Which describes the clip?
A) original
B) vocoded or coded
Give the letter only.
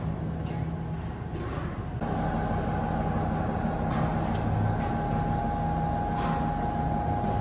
A